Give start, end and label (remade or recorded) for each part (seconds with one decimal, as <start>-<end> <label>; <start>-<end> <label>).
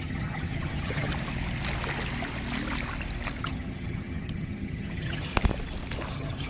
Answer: 0.0-1.1 remade; 1.1-3.4 recorded; 3.4-5.3 remade; 5.3-6.1 recorded; 6.1-6.5 remade